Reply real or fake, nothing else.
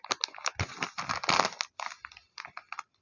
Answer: real